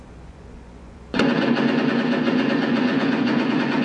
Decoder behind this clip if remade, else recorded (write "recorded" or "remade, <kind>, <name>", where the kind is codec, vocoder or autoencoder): remade, vocoder, Vocos